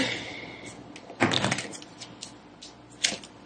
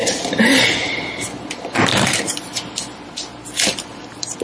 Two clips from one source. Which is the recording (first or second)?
first